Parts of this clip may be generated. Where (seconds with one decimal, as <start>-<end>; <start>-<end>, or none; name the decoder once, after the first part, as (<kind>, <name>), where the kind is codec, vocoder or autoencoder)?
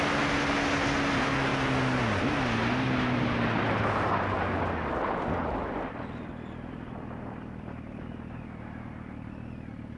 none